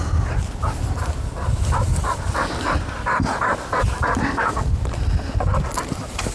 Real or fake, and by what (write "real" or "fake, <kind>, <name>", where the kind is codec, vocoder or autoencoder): real